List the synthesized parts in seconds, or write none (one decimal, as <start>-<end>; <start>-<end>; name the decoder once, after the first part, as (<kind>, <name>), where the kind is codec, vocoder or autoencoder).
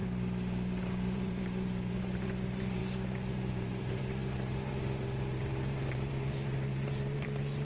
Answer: 0.8-2.8 (vocoder, BigVGAN v2); 3.3-7.6